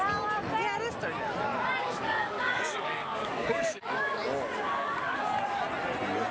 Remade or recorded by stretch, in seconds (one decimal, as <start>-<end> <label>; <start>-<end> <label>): 0.0-1.8 recorded; 1.8-5.6 remade; 5.6-6.3 recorded